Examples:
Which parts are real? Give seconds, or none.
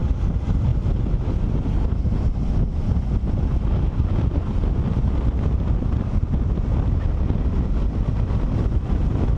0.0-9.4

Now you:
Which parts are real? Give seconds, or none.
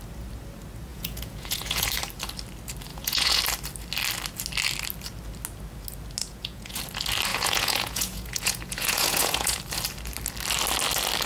0.0-0.9; 1.9-2.9; 3.4-6.2; 6.8-7.3; 9.6-11.3